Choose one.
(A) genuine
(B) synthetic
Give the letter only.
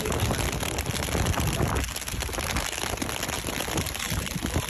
A